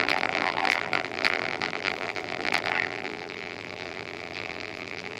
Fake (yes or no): yes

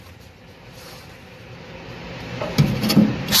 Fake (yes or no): no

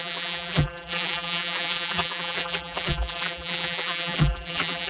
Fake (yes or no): yes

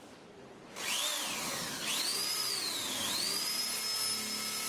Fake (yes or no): no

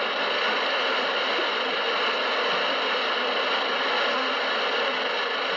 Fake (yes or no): no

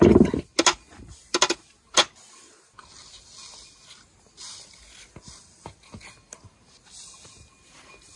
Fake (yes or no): no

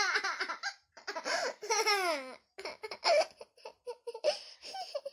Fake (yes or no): no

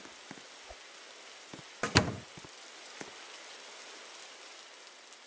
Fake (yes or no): no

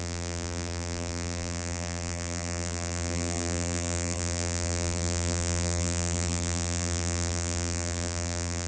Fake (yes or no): yes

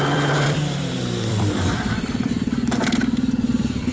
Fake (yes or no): yes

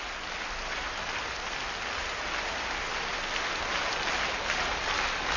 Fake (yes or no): no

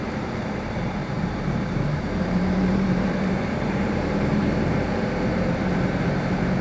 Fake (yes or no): yes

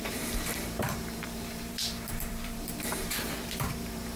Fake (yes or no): yes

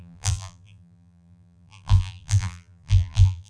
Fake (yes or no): yes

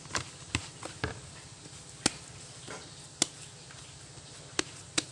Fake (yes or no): no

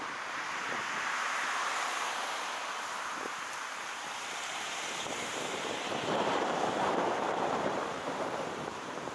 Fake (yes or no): yes